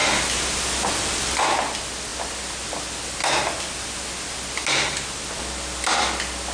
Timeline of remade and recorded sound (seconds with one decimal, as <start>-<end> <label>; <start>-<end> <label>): 0.0-6.5 recorded